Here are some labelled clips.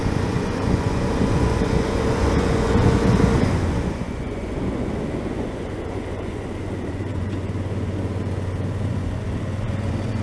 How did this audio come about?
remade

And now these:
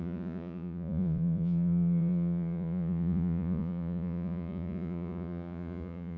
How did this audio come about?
remade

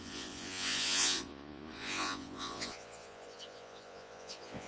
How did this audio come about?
remade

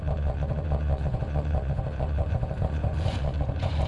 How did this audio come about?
remade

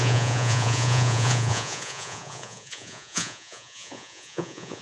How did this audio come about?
remade